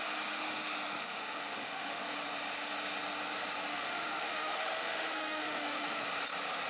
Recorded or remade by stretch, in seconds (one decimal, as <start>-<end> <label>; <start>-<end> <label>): 0.0-1.0 recorded; 1.0-2.0 remade; 2.0-3.7 recorded; 3.7-6.0 remade; 6.0-6.7 recorded